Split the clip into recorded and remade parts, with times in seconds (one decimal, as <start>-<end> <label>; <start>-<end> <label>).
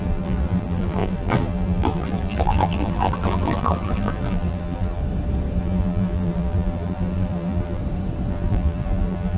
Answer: 0.0-5.0 remade; 5.0-5.6 recorded; 5.6-7.8 remade; 7.8-8.3 recorded; 8.3-9.4 remade